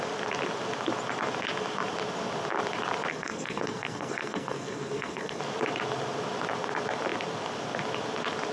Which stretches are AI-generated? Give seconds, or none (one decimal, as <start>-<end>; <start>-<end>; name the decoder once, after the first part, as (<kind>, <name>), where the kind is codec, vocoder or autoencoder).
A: 3.1-5.4 (codec, SNAC)